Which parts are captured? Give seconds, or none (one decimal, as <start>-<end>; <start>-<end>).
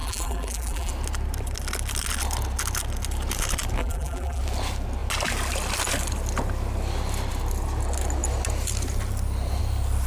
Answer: 0.9-3.8; 4.4-10.1